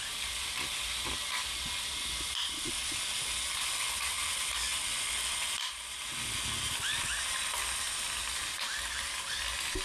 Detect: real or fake real